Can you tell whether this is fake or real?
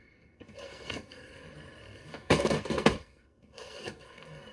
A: fake